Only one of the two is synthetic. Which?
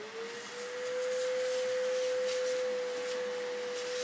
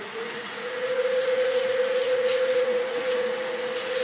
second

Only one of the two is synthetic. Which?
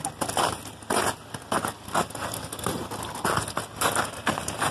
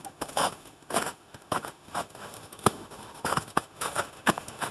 second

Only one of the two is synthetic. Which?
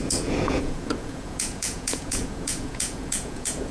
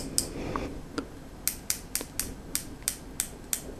first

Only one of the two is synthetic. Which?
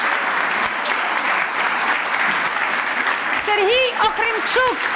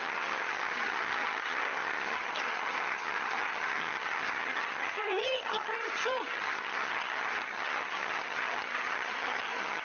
second